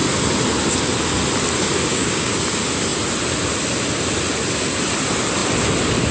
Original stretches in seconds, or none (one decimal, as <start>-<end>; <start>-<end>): 0.0-1.9; 2.4-6.1